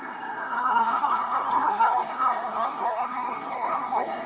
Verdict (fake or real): fake